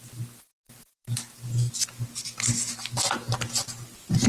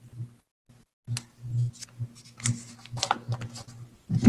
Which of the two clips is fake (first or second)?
first